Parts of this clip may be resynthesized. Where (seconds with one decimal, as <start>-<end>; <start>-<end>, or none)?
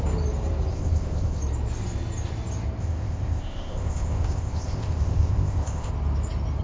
0.7-1.4; 2.8-5.9